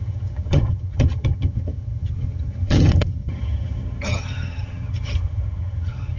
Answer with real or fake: fake